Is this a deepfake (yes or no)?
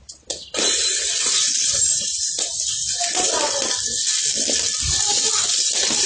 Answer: no